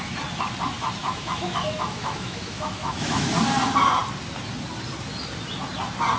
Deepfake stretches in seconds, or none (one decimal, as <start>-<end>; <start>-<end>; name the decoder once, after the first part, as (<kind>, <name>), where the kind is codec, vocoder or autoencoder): 1.0-3.3 (autoencoder, DAC-VAE)